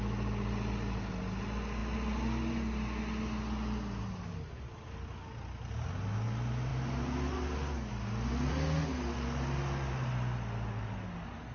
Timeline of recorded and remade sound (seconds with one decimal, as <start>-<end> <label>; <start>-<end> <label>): 0.0-11.5 recorded